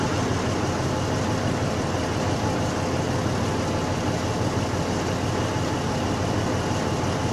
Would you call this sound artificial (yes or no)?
no